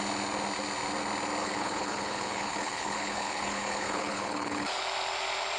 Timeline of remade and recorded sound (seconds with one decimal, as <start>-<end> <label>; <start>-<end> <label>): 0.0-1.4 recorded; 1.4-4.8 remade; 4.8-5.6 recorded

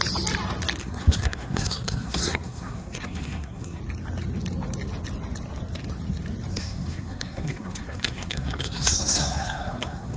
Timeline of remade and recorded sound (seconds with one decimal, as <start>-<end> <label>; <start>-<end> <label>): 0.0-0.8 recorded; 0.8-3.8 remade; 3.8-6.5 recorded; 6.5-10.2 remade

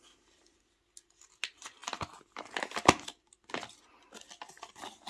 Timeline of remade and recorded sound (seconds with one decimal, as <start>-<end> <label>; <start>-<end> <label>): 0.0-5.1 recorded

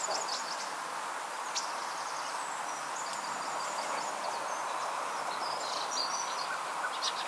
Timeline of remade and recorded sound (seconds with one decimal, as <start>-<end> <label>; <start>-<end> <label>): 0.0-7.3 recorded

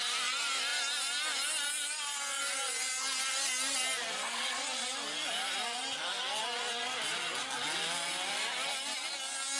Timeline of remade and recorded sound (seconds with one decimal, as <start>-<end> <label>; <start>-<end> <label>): 0.0-9.6 recorded

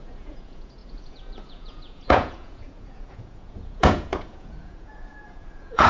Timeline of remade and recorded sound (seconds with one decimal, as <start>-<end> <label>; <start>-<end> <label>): 0.0-5.9 remade

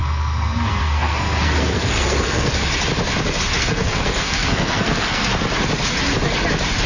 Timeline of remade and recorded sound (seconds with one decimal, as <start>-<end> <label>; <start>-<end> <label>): 0.0-2.5 remade; 2.5-3.6 recorded; 3.6-5.3 remade; 5.3-6.9 recorded